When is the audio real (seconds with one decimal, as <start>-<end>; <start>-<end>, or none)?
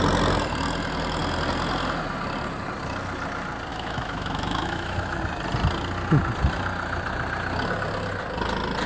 0.0-3.7; 5.2-8.9